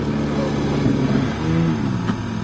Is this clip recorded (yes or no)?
yes